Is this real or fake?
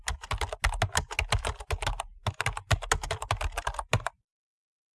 real